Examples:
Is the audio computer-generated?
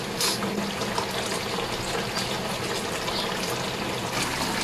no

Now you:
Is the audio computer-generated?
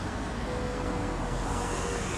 yes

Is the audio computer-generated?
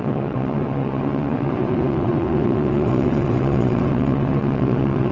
yes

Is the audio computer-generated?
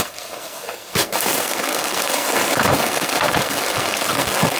yes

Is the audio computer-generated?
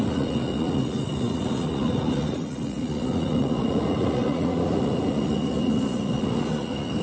yes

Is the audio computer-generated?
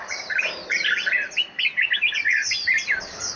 no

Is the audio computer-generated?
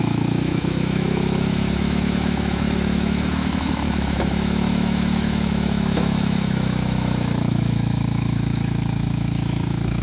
yes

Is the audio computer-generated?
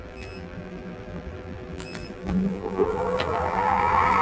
yes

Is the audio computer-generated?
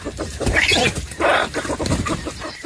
yes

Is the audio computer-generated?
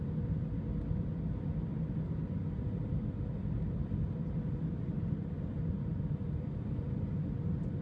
no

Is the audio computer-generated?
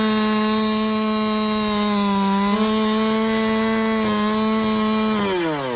no